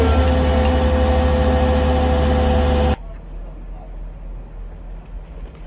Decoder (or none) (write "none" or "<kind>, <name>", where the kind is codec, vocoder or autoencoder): none